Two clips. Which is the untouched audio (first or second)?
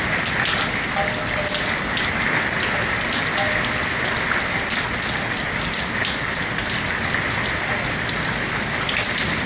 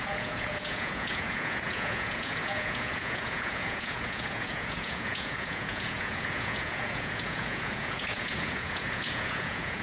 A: first